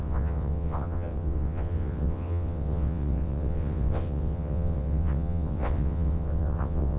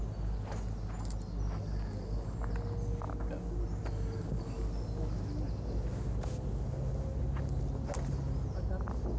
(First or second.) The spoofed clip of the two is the first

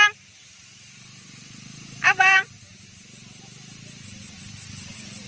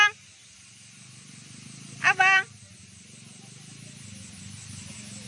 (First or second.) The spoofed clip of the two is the first